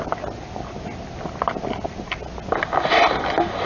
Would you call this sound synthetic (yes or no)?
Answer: no